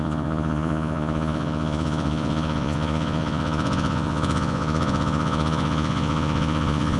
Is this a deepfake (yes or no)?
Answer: yes